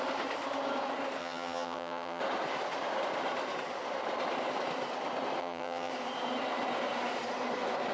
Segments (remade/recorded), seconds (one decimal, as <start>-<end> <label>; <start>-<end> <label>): 0.0-1.2 recorded; 1.2-2.2 remade; 2.2-5.4 recorded; 5.4-5.9 remade; 5.9-7.9 recorded